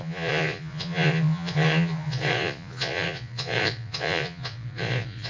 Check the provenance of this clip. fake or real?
fake